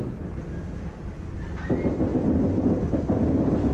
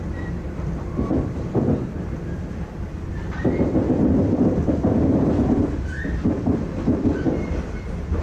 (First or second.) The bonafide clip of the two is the first